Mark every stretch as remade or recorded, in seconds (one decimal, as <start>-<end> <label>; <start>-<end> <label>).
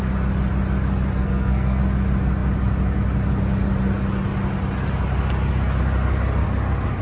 0.0-1.2 recorded; 1.2-1.8 remade; 1.8-7.0 recorded